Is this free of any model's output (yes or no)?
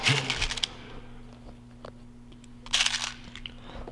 yes